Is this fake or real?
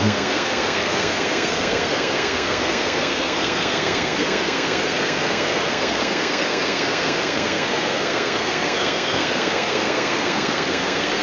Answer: fake